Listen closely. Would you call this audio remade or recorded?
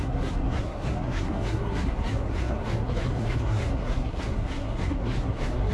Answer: remade